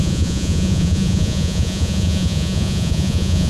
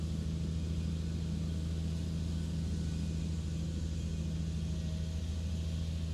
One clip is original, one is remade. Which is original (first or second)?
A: second